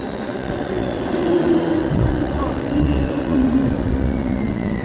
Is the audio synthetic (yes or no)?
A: yes